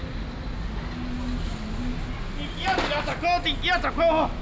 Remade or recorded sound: recorded